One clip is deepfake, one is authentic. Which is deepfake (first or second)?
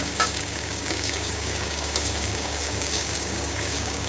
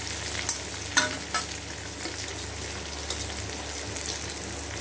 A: first